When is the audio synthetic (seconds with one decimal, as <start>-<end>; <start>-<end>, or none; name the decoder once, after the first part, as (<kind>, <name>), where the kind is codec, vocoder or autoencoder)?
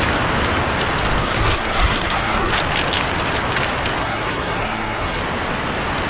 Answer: 1.2-2.5 (codec, SNAC); 4.0-5.2